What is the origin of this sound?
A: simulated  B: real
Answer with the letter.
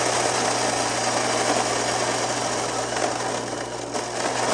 B